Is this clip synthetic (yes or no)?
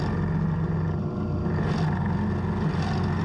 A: no